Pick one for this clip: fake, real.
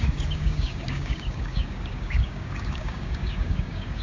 fake